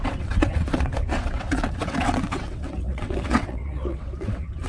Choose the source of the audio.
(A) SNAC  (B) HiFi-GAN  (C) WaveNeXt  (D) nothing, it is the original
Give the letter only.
C